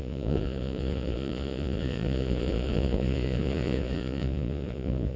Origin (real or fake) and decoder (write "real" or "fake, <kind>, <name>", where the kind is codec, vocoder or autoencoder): fake, vocoder, Vocos